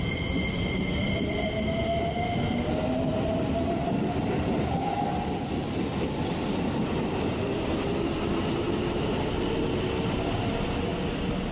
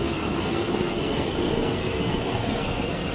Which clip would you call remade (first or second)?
second